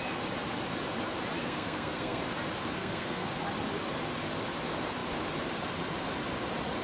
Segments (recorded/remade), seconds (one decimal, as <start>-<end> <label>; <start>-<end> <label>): 0.0-1.4 recorded; 1.4-2.2 remade; 2.2-2.8 recorded; 2.8-3.3 remade; 3.3-6.8 recorded